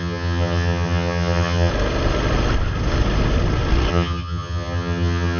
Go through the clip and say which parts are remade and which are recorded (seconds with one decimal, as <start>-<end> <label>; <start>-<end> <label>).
0.0-1.7 remade; 1.7-3.9 recorded; 3.9-5.4 remade